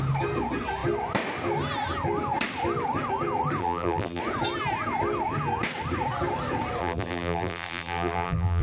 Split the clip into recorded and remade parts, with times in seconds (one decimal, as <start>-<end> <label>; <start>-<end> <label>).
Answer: 0.0-3.6 recorded; 3.6-4.2 remade; 4.2-6.8 recorded; 6.8-8.6 remade